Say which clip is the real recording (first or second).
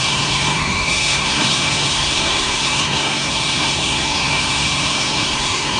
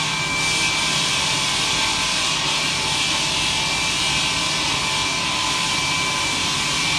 second